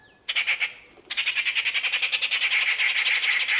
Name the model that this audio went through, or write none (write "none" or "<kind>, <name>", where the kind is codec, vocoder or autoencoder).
none